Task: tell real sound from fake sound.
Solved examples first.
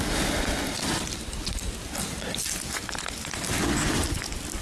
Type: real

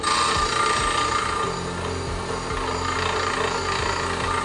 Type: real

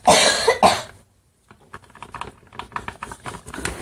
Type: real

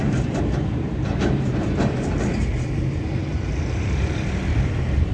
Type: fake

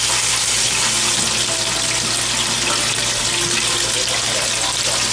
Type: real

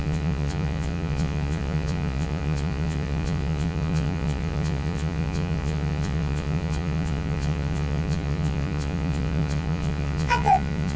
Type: fake